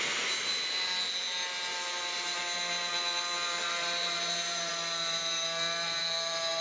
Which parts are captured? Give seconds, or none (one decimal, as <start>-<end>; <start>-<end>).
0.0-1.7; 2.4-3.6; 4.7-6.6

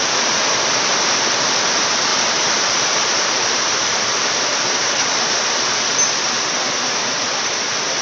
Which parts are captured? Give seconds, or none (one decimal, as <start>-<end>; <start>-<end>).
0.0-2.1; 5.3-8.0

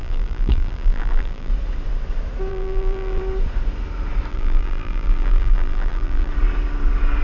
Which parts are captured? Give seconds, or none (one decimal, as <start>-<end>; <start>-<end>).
1.5-2.5; 3.2-4.3; 6.3-7.2

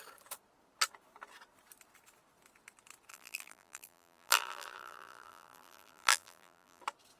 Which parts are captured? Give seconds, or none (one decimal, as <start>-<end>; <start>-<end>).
0.0-3.1; 6.8-7.2

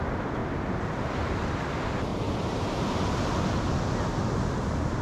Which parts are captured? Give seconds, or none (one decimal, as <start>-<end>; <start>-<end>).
0.0-0.4; 1.2-5.0

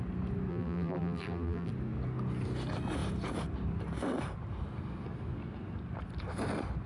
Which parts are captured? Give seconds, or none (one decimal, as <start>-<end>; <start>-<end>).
0.0-0.5; 1.7-6.9